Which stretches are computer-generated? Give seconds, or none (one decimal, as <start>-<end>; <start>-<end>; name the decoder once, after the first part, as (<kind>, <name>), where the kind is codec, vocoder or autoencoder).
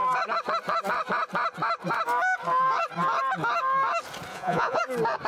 4.3-4.8 (vocoder, Vocos)